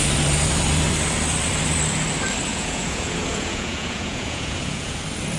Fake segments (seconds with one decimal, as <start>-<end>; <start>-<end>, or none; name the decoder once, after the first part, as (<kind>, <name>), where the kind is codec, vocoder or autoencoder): 2.5-5.0 (vocoder, Vocos)